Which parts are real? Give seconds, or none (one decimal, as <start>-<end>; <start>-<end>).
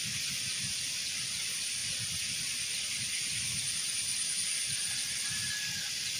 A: 0.0-6.2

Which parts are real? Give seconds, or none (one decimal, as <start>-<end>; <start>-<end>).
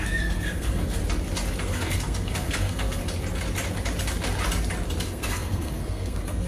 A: 1.0-1.6; 3.0-5.0